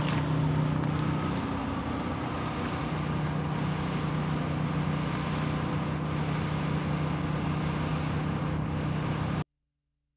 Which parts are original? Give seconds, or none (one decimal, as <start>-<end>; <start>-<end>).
0.0-10.2